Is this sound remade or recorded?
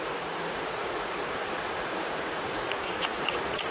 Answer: remade